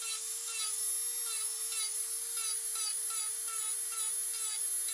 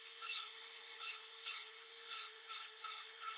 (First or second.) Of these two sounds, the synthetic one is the second